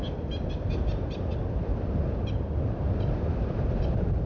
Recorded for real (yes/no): yes